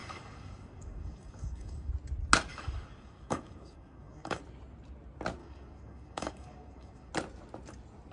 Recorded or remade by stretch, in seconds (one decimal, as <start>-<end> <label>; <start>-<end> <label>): 0.0-1.9 remade; 1.9-2.5 recorded; 2.5-4.4 remade; 4.4-5.4 recorded; 5.4-7.1 remade; 7.1-8.1 recorded